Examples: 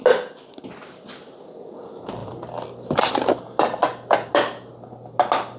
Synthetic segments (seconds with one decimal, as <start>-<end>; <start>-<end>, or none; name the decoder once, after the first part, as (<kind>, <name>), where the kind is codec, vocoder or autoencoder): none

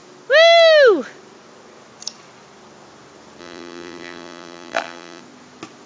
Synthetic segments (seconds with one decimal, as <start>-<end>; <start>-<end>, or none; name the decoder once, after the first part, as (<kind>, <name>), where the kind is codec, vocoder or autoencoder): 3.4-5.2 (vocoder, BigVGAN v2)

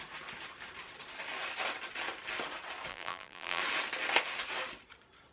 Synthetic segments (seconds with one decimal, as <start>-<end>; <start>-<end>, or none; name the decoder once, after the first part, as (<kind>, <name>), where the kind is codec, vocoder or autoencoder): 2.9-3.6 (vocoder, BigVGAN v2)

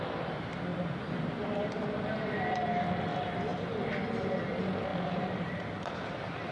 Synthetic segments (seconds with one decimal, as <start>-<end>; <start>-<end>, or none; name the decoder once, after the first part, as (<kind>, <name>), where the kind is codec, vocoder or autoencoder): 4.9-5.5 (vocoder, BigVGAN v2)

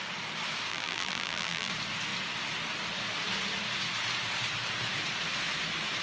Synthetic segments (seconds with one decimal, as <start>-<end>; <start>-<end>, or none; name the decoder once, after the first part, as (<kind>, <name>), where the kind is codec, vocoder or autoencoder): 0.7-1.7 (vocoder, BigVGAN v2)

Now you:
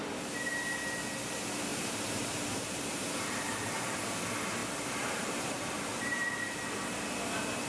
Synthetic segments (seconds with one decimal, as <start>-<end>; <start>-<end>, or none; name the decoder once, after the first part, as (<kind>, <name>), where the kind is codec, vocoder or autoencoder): 1.7-3.8 (vocoder, BigVGAN v2); 4.6-6.6